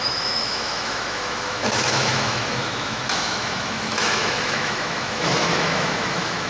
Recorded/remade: remade